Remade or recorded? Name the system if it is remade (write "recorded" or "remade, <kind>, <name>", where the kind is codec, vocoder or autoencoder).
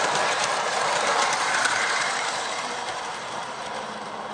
remade, vocoder, BigVGAN v2